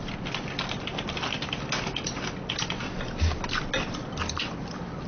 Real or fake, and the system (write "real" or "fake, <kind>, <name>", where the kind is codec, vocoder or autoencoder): real